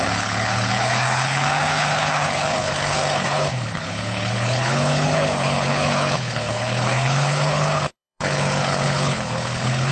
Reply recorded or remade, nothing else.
remade